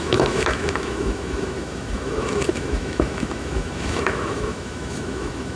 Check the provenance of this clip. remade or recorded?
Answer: remade